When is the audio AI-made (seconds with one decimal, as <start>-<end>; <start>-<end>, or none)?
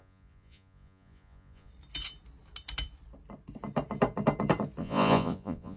0.0-1.7; 4.8-5.8